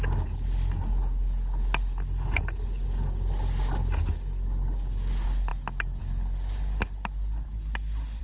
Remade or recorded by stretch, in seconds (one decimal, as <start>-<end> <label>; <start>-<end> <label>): 0.0-8.2 recorded